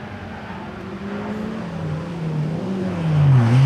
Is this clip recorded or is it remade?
recorded